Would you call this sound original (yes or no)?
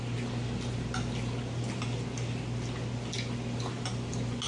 yes